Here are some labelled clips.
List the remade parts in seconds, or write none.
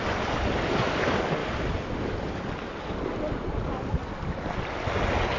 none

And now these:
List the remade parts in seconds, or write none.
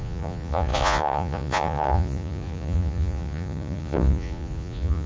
0.0-5.1 (vocoder, Vocos)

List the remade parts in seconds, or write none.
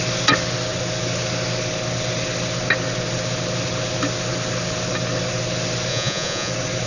5.9-6.5 (vocoder, Vocos)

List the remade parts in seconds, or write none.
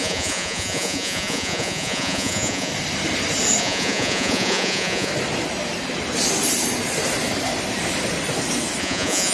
0.0-2.7 (vocoder, Vocos); 3.6-5.1; 8.8-9.3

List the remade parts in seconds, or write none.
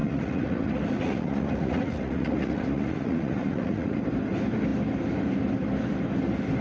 0.0-4.0 (vocoder, Vocos)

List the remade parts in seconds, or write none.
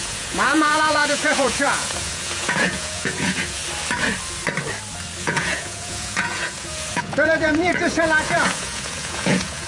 0.0-3.6 (vocoder, Vocos); 5.2-9.7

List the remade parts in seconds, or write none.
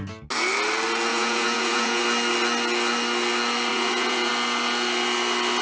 1.1-2.0 (vocoder, Vocos); 3.7-4.3